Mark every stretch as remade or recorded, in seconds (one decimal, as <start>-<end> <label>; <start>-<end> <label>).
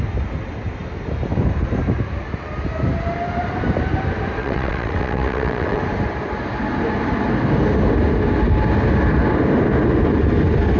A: 0.0-4.4 recorded; 4.4-5.8 remade; 5.8-10.8 recorded